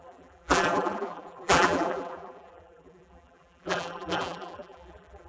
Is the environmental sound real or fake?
fake